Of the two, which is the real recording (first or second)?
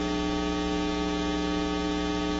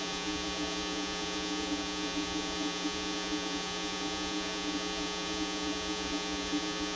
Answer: first